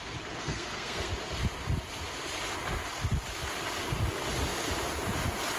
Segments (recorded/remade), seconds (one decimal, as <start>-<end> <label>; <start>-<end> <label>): 0.0-0.4 recorded; 0.4-1.1 remade; 1.1-5.6 recorded